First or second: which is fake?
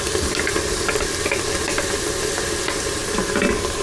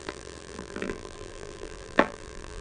second